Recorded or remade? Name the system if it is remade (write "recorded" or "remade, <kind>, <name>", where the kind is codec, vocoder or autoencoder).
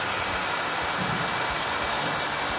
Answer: recorded